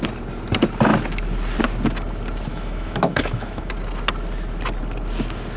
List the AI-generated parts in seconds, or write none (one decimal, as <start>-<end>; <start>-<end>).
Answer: 2.5-3.7